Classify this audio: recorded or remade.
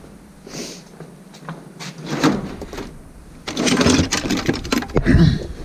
recorded